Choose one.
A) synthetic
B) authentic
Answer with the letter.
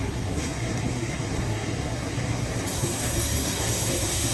A